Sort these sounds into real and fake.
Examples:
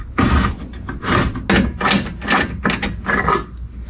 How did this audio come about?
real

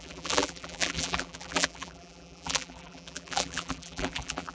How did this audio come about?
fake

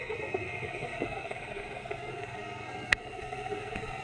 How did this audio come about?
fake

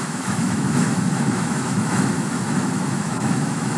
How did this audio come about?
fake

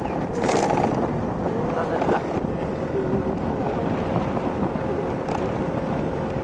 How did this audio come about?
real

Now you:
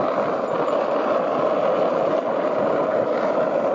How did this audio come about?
real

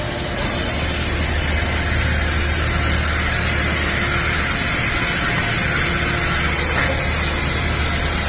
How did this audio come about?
real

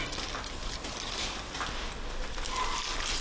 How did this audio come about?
real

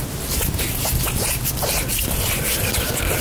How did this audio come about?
real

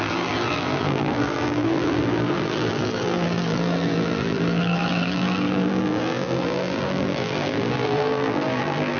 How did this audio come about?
fake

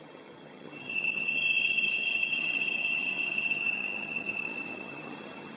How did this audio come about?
fake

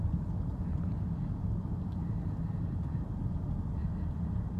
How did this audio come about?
real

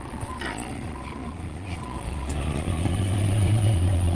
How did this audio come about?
fake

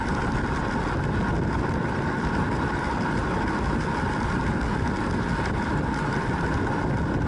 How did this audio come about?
real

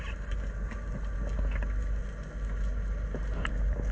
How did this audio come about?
real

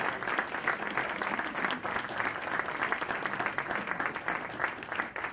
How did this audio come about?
real